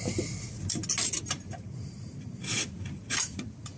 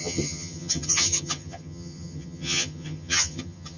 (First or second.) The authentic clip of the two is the first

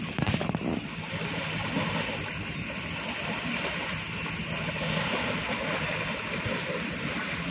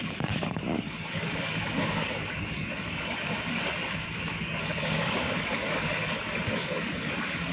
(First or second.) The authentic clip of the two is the first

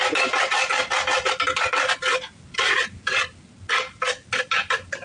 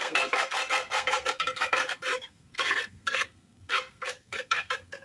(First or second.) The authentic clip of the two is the first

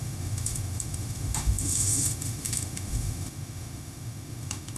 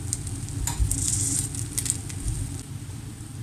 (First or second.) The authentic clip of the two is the second